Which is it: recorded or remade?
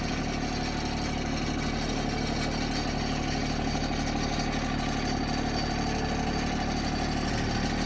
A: recorded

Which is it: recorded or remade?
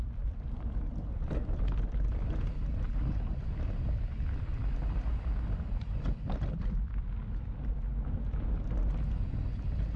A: remade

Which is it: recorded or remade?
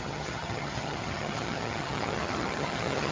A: remade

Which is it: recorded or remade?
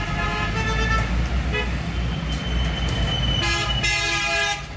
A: recorded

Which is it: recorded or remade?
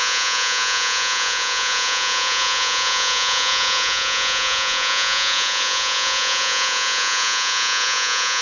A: remade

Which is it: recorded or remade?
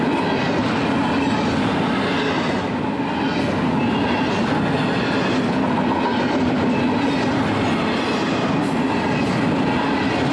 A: recorded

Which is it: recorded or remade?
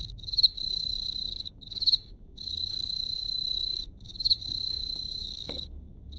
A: remade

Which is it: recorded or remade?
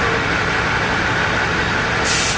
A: recorded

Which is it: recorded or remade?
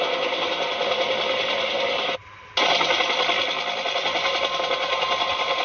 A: recorded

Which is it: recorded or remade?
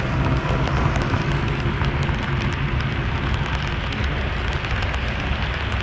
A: recorded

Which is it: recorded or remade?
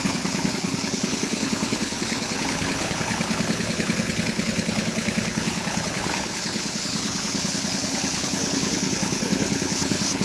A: remade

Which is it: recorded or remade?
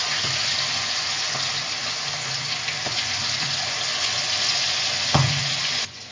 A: remade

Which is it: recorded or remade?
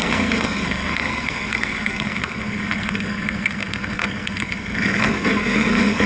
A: remade